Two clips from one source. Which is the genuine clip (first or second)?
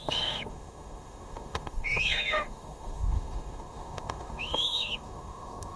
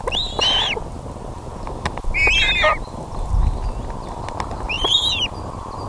second